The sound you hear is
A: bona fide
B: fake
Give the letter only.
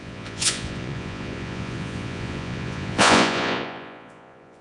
B